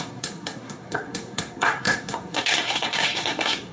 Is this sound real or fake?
fake